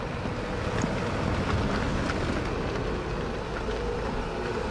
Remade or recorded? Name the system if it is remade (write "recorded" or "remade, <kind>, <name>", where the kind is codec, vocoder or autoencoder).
recorded